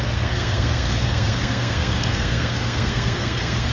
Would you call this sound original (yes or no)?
no